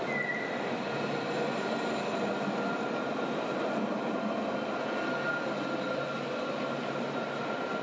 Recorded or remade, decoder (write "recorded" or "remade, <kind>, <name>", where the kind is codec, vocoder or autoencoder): recorded